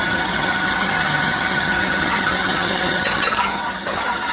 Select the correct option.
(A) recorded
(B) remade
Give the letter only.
B